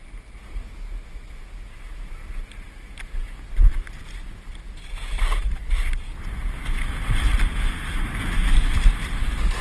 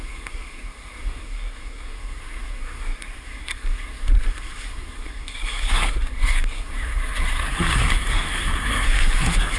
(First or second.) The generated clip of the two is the second